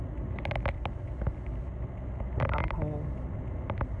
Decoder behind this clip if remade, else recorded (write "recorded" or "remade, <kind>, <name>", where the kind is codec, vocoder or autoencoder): recorded